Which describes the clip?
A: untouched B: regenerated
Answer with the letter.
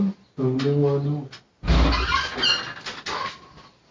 A